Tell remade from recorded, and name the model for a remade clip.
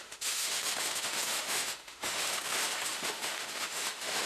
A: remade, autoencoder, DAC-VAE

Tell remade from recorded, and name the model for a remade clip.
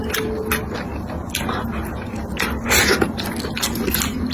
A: recorded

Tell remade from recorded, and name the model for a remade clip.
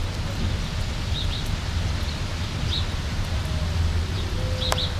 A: recorded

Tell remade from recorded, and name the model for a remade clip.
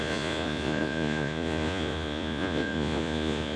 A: remade, vocoder, Vocos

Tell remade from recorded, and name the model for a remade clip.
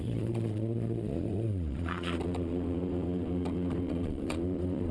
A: remade, vocoder, Vocos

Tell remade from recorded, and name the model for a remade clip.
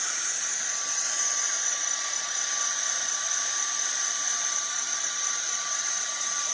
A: recorded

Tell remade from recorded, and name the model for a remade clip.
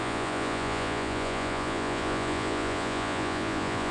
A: remade, vocoder, Vocos